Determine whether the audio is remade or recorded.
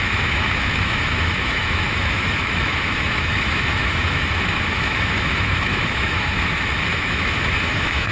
remade